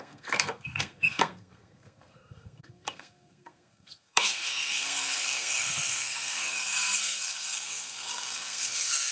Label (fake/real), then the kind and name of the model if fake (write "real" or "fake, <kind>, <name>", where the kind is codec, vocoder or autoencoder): fake, codec, SNAC